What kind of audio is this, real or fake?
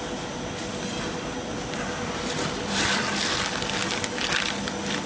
real